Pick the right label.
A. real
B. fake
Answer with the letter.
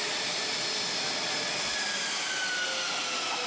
A